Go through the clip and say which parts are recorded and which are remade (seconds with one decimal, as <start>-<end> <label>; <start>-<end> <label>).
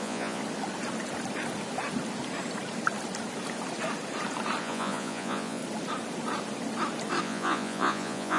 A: 0.0-0.4 remade; 0.4-4.6 recorded; 4.6-5.6 remade; 5.6-7.2 recorded; 7.2-8.4 remade